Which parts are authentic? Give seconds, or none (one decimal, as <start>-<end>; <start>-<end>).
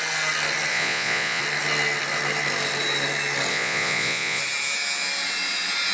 0.0-0.7; 1.4-3.5; 4.4-5.9